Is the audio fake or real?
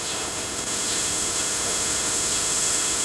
fake